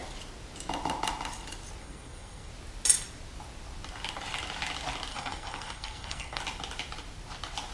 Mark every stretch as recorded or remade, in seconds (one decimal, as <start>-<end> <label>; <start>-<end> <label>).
0.0-1.8 recorded; 1.8-2.5 remade; 2.5-5.1 recorded; 5.1-6.4 remade; 6.4-7.7 recorded